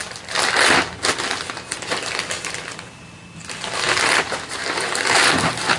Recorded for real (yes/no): yes